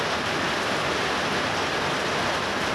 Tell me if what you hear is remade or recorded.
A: recorded